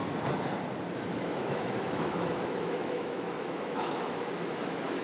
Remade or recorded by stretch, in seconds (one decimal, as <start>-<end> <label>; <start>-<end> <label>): 0.0-1.1 recorded; 1.1-5.0 remade